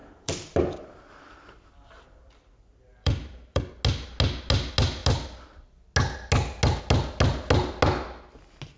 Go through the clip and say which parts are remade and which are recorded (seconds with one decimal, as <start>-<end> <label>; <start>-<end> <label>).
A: 0.0-3.7 remade; 3.7-8.8 recorded